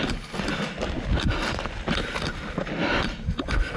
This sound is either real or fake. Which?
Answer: real